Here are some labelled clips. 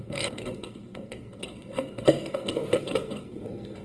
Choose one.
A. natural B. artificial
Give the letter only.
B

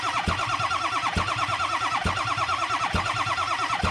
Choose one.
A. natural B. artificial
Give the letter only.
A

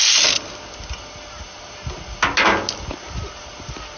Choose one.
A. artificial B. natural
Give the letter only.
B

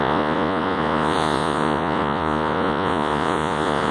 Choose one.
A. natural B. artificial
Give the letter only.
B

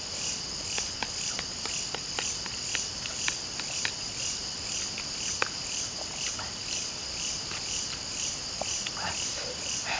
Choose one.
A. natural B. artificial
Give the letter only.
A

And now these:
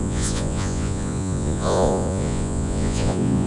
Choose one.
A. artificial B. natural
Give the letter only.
A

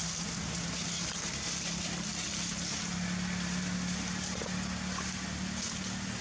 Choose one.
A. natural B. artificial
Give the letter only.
A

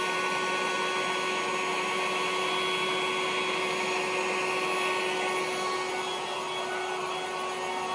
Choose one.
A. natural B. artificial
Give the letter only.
A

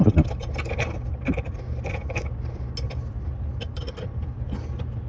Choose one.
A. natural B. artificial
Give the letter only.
A